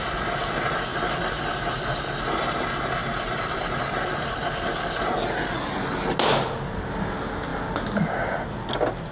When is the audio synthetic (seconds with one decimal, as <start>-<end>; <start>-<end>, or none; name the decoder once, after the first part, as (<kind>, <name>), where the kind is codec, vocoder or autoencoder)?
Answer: 3.0-3.6 (vocoder, BigVGAN v2)